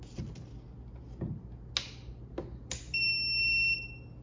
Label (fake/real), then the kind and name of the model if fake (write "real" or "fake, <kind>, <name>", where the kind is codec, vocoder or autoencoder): real